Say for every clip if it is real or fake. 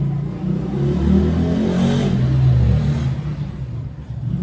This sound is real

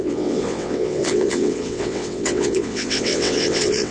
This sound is fake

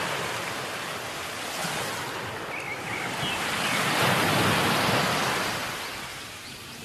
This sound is real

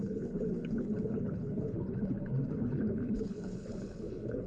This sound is fake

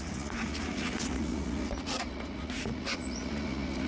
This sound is fake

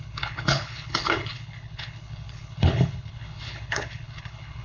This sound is fake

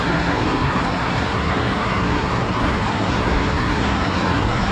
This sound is fake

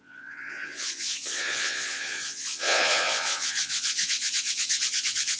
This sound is fake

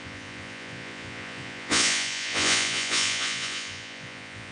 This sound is fake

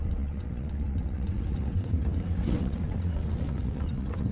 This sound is fake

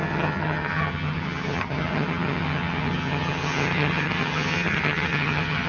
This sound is fake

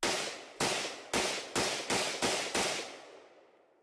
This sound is real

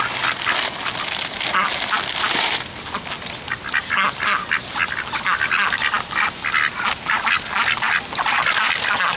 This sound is real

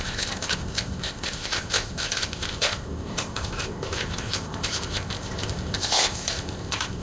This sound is fake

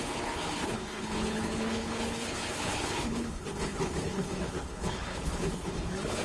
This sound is fake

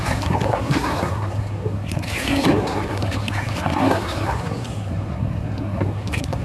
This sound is fake